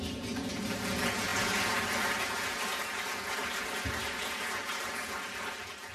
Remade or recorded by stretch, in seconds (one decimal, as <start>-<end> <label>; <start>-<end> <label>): 0.0-5.9 recorded